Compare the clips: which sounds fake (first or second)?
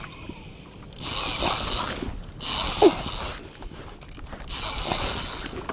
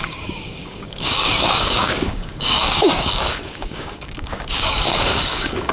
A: second